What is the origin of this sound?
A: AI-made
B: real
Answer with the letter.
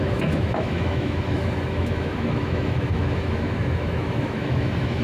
A